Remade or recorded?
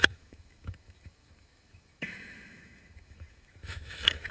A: remade